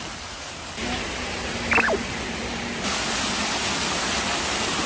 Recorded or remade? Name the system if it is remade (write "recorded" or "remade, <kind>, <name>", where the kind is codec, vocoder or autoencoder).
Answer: recorded